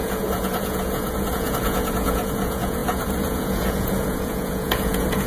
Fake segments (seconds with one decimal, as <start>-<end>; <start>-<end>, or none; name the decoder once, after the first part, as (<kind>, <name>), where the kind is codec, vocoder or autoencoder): 0.0-5.3 (vocoder, Vocos)